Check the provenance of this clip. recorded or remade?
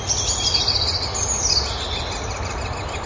recorded